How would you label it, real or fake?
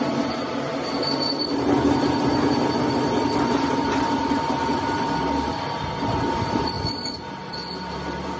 real